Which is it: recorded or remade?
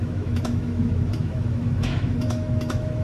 remade